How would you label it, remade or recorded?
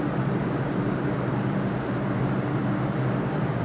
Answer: recorded